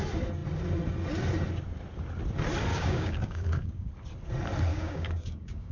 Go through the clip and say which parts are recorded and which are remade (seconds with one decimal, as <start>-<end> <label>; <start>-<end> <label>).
0.0-2.7 recorded; 2.7-3.9 remade; 3.9-4.7 recorded; 4.7-5.7 remade